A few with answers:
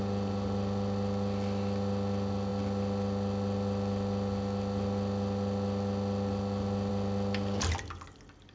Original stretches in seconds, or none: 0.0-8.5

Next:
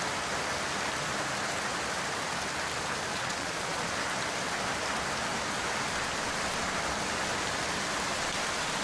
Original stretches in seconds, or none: 0.0-3.1; 3.9-8.8

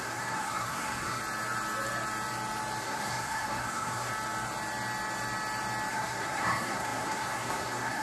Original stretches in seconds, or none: 1.2-2.8; 4.1-5.9